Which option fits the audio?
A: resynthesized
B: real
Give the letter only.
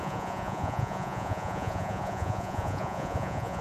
A